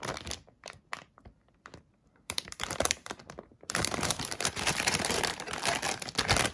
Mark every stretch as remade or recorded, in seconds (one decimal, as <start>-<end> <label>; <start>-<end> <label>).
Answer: 0.0-1.7 recorded; 1.7-5.6 remade; 5.6-6.5 recorded